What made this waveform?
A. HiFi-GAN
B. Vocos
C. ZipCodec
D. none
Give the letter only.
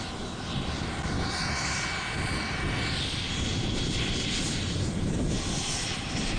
D